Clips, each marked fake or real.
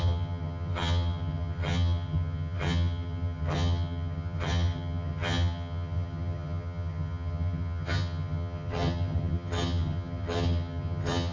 fake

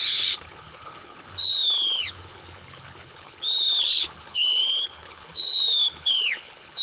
fake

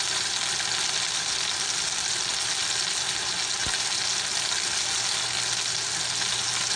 real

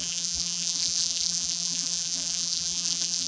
fake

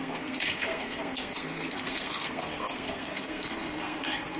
fake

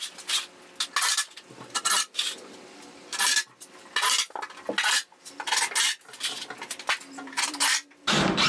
real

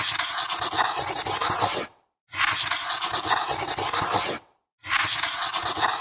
real